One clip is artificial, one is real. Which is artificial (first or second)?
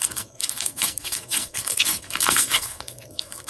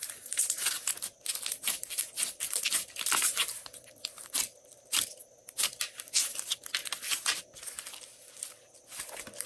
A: first